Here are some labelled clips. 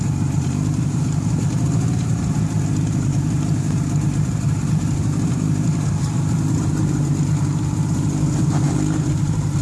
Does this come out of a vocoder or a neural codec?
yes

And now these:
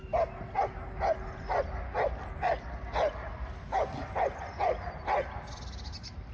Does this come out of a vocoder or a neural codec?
no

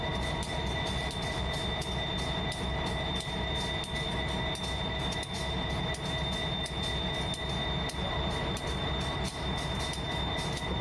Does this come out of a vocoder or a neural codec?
no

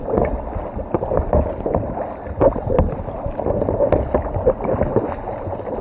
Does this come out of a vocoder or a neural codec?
no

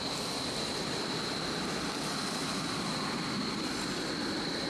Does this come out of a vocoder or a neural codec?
no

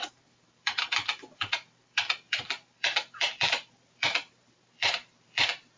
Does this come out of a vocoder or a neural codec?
yes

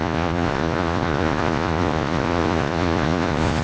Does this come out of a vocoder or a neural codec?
yes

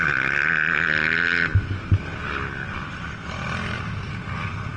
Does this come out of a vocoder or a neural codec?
no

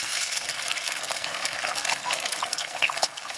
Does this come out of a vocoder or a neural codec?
yes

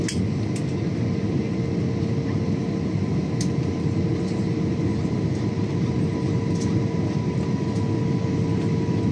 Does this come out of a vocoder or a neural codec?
no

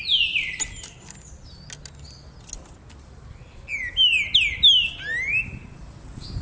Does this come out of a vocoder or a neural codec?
no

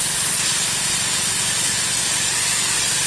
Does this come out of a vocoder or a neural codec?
no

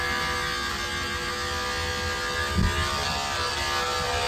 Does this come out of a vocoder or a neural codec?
no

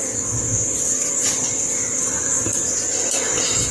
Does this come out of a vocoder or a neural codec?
no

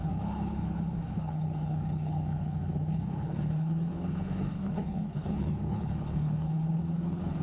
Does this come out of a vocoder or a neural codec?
yes